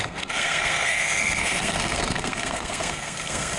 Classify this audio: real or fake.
fake